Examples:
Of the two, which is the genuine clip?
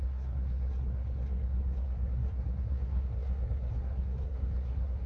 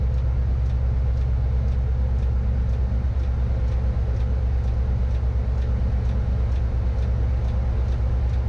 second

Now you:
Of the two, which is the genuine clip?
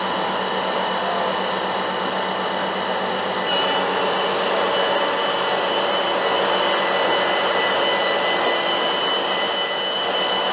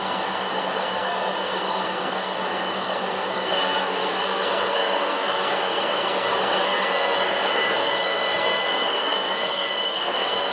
first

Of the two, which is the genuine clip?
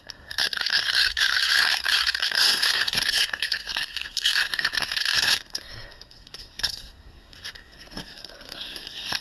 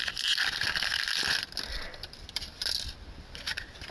second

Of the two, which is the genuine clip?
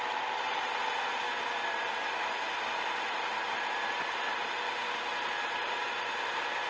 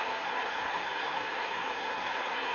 first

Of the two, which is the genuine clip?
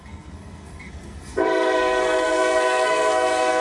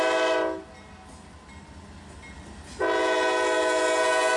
second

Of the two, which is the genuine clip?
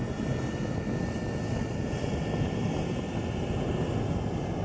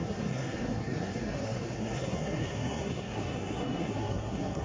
first